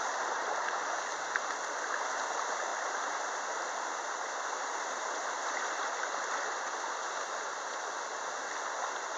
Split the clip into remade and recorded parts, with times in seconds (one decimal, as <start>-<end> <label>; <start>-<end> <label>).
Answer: 0.0-2.7 recorded; 2.7-6.2 remade; 6.2-9.2 recorded